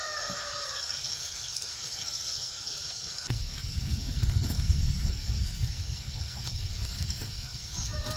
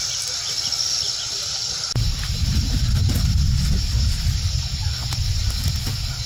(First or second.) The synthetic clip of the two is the first